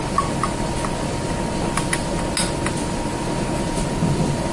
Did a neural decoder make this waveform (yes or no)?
no